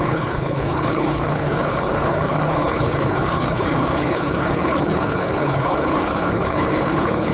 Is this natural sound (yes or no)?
no